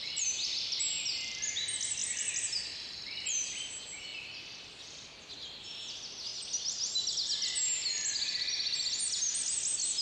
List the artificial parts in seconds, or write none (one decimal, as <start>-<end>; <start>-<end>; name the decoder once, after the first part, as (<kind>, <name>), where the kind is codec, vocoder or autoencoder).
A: 2.0-2.6 (vocoder, BigVGAN v2)